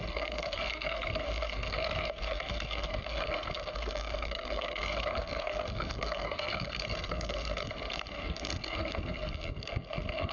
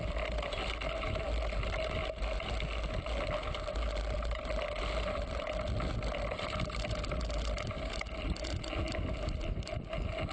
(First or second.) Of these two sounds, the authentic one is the second